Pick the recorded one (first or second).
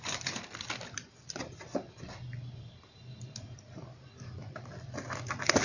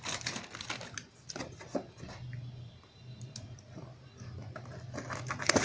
second